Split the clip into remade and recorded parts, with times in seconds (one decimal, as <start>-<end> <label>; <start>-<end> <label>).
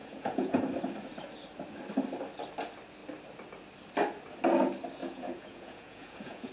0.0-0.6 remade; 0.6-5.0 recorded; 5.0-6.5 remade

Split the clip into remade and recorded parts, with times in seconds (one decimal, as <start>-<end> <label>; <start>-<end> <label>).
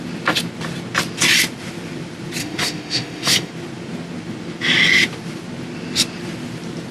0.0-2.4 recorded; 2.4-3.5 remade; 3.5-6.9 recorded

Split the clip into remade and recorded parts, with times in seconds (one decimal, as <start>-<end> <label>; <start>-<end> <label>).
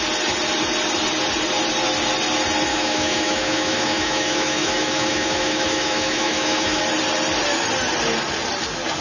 0.0-2.7 recorded; 2.7-6.8 remade; 6.8-9.0 recorded